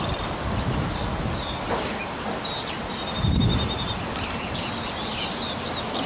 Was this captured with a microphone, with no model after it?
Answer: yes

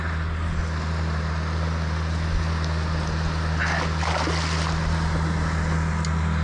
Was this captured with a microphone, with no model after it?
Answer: yes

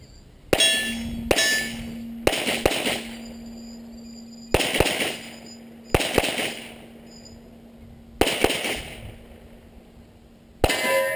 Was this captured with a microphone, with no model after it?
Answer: yes